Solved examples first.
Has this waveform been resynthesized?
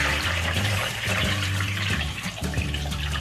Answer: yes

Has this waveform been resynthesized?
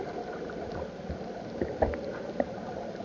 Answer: no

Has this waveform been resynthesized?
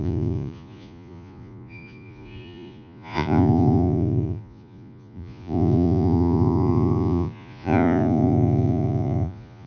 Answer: yes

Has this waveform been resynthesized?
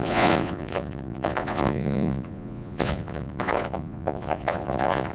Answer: yes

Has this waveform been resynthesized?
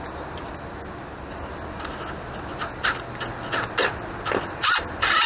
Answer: no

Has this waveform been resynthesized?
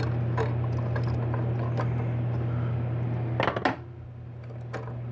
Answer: no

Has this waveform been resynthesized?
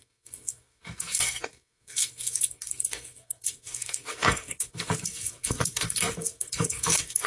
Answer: yes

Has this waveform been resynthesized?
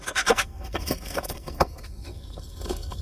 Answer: yes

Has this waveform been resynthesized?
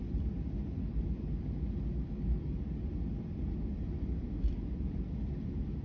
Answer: no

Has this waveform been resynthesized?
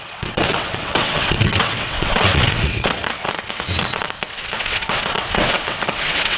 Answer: yes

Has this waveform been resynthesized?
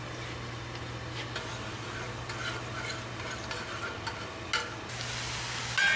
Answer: no